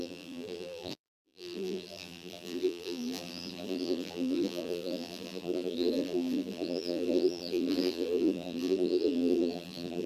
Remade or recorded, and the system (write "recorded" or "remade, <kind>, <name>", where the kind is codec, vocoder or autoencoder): remade, vocoder, BigVGAN v2